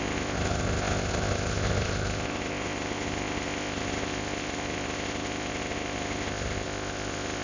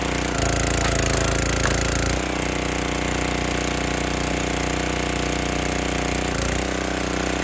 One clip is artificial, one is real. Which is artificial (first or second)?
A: first